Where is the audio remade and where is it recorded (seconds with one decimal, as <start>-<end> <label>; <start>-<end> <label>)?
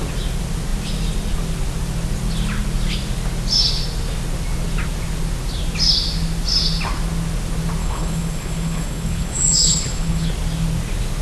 0.0-7.8 recorded; 7.8-10.3 remade; 10.3-11.2 recorded